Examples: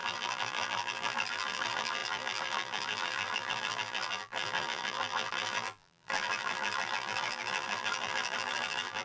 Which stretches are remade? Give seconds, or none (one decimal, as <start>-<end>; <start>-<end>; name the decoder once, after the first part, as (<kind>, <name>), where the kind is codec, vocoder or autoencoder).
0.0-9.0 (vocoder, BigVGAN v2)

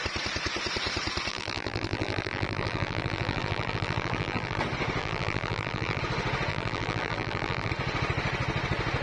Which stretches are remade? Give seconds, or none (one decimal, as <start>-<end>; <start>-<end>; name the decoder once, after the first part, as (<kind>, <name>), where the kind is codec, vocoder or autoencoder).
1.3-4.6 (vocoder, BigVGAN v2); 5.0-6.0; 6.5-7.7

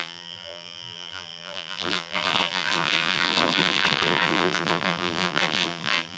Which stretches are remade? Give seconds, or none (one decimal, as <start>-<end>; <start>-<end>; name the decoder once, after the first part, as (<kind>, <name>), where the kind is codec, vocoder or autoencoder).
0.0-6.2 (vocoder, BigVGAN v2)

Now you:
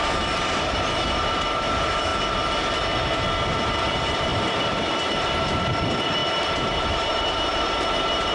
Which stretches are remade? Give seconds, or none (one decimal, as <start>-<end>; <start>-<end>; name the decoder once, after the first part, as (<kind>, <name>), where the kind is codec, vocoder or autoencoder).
0.0-2.1 (vocoder, BigVGAN v2); 3.6-8.3

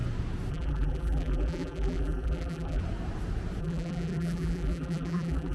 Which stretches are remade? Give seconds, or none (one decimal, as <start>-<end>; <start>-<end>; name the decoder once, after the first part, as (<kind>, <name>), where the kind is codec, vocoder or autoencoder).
0.5-2.8 (vocoder, BigVGAN v2); 3.6-5.5